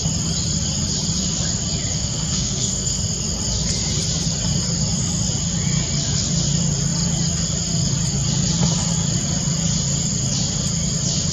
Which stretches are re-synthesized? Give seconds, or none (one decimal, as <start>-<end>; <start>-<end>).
1.9-3.0